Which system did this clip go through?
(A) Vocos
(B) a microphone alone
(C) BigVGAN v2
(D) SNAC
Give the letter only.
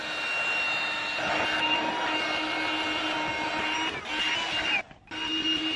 B